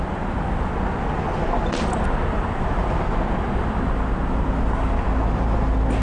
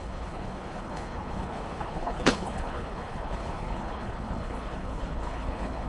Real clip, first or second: first